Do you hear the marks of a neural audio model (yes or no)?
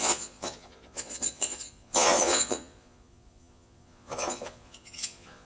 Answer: yes